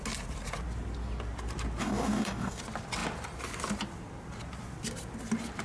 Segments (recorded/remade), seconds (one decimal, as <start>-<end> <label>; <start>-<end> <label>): 0.0-1.8 recorded; 1.8-2.6 remade; 2.6-5.6 recorded